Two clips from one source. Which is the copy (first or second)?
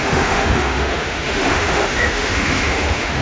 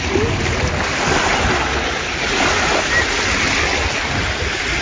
first